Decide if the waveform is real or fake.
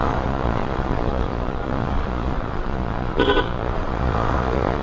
fake